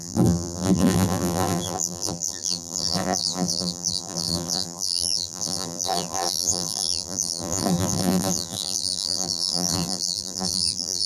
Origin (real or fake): fake